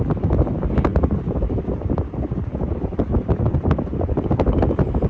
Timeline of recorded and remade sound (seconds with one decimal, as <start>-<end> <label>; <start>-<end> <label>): 0.0-5.1 recorded